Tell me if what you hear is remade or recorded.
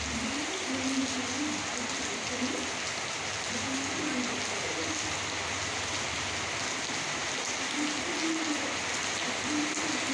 recorded